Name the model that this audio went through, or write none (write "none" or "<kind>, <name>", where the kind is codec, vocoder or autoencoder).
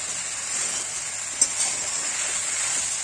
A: none